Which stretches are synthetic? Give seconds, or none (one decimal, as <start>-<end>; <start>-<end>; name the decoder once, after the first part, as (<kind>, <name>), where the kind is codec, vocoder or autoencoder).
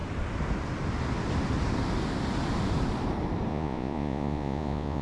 3.5-5.0 (vocoder, Vocos)